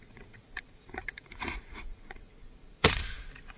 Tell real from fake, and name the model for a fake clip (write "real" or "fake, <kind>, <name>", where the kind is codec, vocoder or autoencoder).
fake, vocoder, Vocos